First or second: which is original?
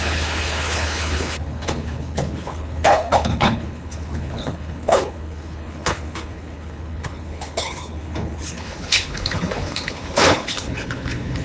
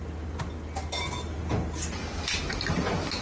second